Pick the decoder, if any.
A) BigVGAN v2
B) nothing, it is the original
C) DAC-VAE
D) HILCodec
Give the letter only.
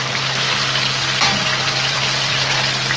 A